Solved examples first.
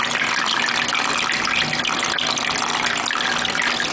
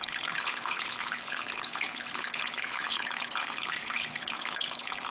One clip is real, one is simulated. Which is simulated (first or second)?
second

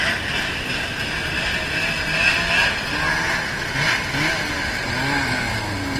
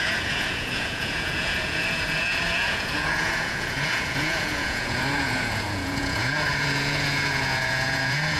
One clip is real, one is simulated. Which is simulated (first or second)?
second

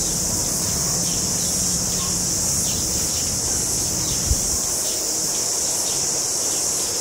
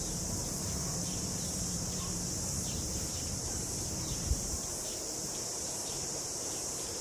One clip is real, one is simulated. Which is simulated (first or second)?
second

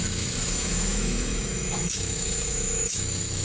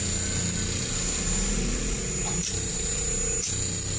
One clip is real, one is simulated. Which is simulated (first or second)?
first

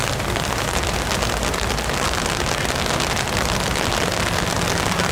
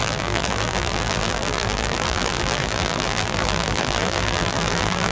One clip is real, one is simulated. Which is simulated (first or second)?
second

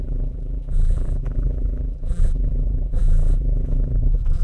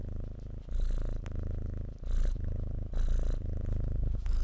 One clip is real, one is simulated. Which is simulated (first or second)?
first